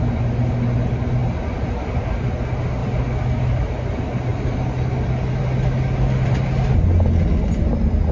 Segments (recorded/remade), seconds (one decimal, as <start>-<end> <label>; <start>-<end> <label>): 0.0-8.1 recorded